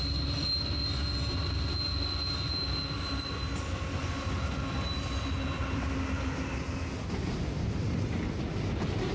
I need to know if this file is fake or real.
real